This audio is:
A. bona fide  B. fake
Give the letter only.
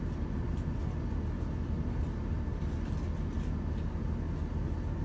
A